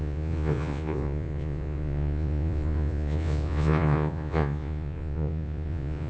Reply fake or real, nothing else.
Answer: fake